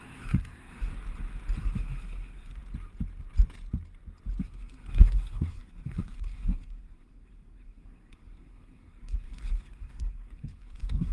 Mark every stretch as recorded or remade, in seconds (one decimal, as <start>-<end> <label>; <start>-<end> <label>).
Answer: 0.0-0.9 remade; 0.9-1.6 recorded; 1.6-2.6 remade; 2.6-4.4 recorded; 4.4-11.1 remade